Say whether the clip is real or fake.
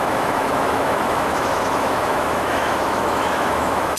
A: fake